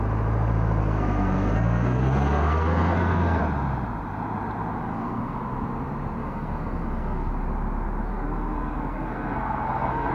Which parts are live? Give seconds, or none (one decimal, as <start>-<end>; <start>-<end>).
0.0-0.8; 3.4-4.9; 5.4-6.2; 7.3-8.1